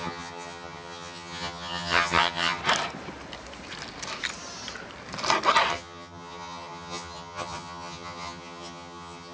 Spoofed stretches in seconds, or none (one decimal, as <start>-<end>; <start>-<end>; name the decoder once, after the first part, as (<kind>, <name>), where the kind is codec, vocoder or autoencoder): 0.0-2.6 (vocoder, HiFi-GAN); 5.7-9.3